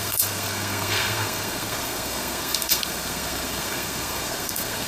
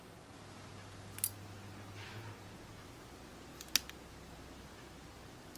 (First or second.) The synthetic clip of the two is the first